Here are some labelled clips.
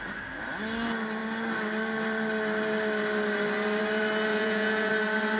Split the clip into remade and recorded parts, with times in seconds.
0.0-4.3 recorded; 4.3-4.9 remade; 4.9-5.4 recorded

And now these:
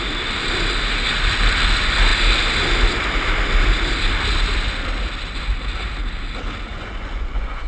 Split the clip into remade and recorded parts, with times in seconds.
0.0-6.7 recorded; 6.7-7.7 remade

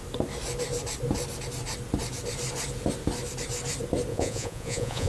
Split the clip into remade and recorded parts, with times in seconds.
0.0-4.1 recorded; 4.1-5.1 remade

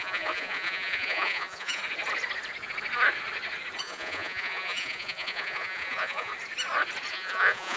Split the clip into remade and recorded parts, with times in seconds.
0.0-1.8 remade; 1.8-3.8 recorded; 3.8-6.3 remade; 6.3-7.1 recorded; 7.1-7.8 remade

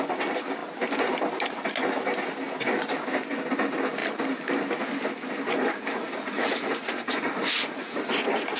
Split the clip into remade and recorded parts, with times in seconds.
0.0-5.9 recorded; 5.9-8.0 remade; 8.0-8.6 recorded

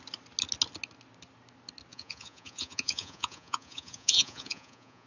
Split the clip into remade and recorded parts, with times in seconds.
0.0-1.9 recorded; 1.9-5.1 remade